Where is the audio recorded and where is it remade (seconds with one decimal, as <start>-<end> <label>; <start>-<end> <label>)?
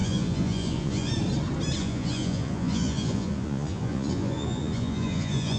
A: 0.0-1.1 remade; 1.1-1.8 recorded; 1.8-5.6 remade